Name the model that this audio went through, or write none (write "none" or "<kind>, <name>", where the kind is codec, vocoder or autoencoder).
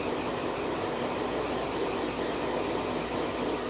none